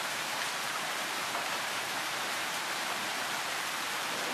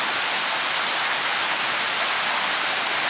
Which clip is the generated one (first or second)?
first